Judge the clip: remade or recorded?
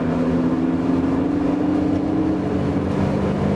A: recorded